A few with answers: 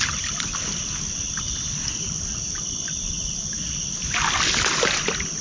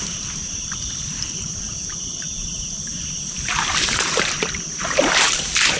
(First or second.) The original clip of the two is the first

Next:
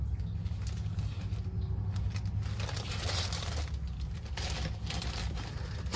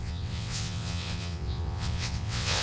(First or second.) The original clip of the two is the first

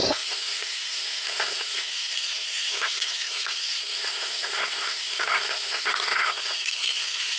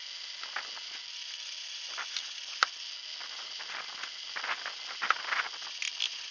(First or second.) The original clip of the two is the second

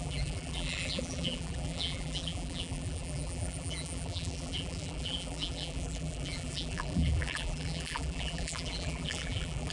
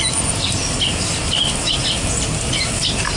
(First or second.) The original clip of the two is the second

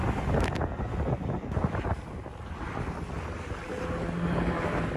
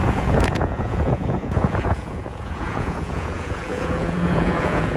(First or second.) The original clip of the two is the first